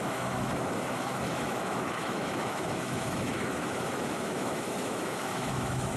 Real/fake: fake